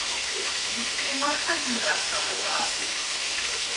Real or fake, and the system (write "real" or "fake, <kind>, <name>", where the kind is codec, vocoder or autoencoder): fake, autoencoder, DAC-VAE